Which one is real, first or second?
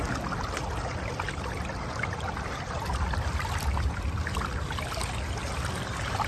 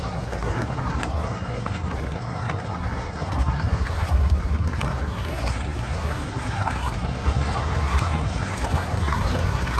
first